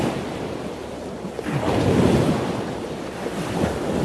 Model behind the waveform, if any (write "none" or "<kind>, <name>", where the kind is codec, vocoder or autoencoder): none